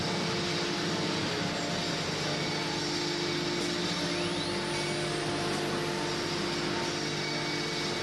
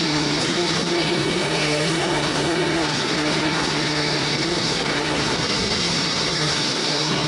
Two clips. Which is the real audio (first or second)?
first